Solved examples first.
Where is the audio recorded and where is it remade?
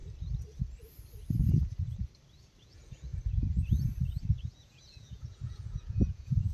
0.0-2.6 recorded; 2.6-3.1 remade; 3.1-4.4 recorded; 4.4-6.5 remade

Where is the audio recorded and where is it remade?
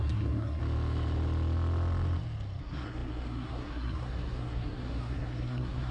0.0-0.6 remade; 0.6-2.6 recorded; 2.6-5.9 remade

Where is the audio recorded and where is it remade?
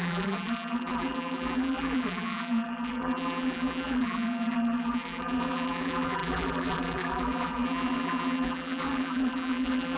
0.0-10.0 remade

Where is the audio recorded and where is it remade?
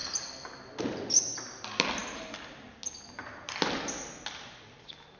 0.0-5.2 recorded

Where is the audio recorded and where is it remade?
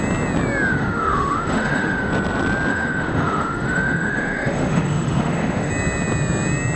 0.0-0.7 recorded; 0.7-2.1 remade; 2.1-2.7 recorded; 2.7-5.7 remade; 5.7-6.8 recorded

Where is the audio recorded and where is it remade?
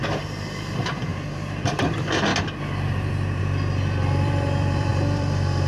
0.0-2.3 remade; 2.3-3.4 recorded; 3.4-5.7 remade